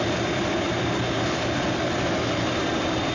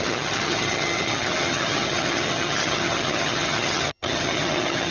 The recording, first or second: first